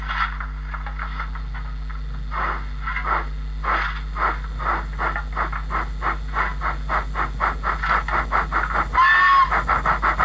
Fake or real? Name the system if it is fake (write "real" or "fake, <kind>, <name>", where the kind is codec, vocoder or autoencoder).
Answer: real